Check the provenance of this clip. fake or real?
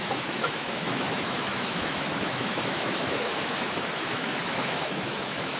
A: fake